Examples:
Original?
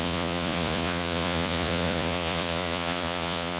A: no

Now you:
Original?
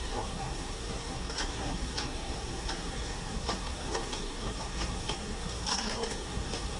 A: no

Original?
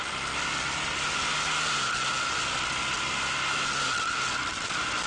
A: yes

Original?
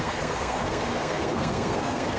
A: no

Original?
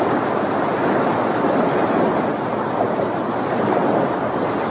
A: yes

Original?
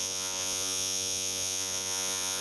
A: no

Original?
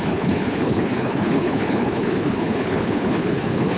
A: no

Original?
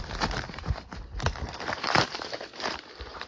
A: no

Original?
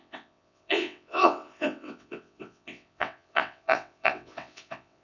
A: no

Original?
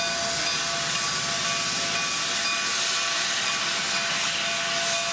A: yes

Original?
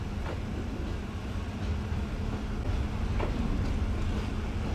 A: yes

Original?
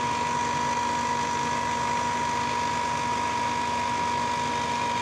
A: yes